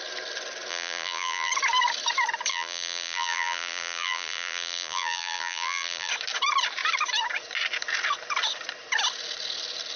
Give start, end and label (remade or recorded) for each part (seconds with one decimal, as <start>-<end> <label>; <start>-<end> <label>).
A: 0.0-0.7 recorded; 0.7-1.5 remade; 1.5-2.5 recorded; 2.5-6.1 remade; 6.1-10.0 recorded